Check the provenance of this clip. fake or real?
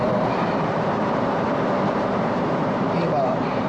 fake